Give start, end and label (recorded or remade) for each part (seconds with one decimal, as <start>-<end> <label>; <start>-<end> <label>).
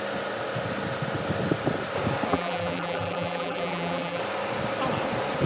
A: 0.0-2.3 recorded; 2.3-4.2 remade; 4.2-5.5 recorded